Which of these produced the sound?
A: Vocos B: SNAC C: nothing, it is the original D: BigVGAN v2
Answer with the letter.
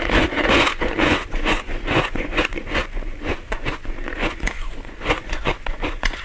A